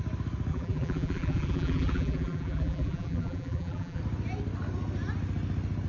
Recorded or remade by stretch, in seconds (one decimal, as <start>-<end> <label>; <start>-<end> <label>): 0.0-0.5 recorded; 0.5-4.0 remade; 4.0-5.9 recorded